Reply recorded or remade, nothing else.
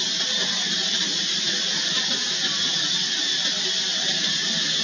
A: recorded